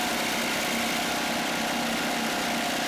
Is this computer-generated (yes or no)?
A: no